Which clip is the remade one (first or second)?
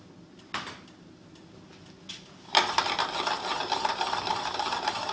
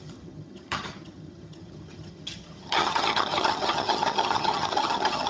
second